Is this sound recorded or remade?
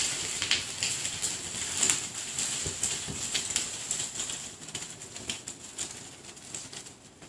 recorded